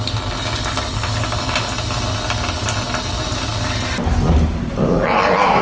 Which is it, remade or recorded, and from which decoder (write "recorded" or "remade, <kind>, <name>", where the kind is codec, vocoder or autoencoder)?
recorded